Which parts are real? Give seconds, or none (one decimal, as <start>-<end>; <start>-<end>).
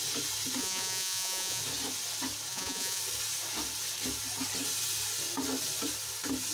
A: 0.0-0.6; 1.6-2.5; 3.0-6.5